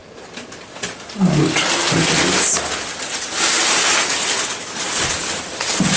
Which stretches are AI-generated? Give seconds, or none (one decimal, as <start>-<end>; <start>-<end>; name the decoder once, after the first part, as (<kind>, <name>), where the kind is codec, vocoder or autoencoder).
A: none